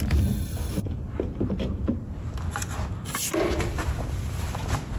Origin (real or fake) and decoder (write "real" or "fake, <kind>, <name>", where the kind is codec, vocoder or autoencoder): real